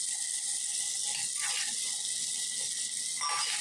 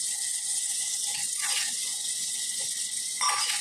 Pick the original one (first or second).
first